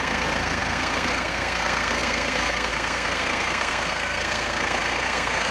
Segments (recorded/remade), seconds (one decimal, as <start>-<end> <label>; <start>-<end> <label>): 0.0-5.5 remade